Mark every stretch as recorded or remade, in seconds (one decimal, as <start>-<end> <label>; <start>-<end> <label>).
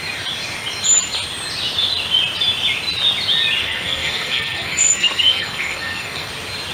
0.0-3.6 recorded; 3.6-6.3 remade; 6.3-6.7 recorded